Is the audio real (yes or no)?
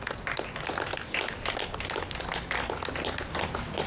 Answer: yes